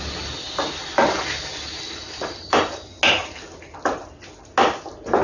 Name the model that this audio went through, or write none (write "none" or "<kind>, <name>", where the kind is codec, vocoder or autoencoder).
none